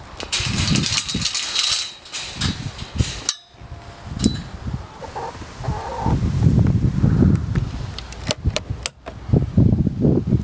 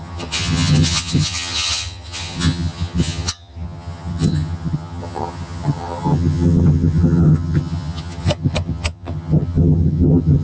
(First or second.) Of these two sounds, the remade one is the second